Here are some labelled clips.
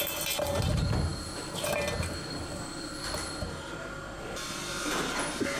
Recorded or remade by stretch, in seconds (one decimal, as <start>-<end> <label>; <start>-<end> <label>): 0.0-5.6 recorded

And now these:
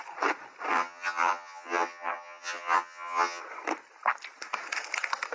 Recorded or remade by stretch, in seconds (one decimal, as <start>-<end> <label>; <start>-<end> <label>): 0.0-0.7 recorded; 0.7-3.4 remade; 3.4-5.3 recorded

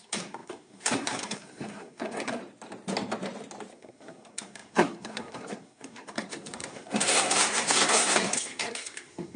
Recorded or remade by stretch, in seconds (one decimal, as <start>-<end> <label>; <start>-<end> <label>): 0.0-2.4 remade; 2.4-3.7 recorded; 3.7-9.4 remade

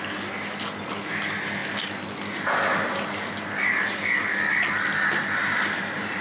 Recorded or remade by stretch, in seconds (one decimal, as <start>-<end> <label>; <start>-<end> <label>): 0.0-5.4 recorded; 5.4-6.2 remade

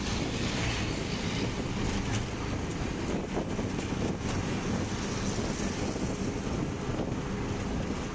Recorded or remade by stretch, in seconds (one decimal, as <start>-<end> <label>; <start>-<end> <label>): 0.0-8.1 recorded

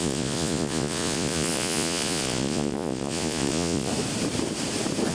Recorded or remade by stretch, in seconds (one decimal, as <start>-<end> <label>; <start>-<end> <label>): 0.0-3.9 remade; 3.9-5.1 recorded

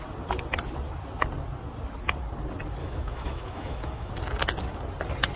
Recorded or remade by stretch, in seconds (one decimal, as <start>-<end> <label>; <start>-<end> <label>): 0.0-2.8 recorded; 2.8-4.1 remade; 4.1-5.4 recorded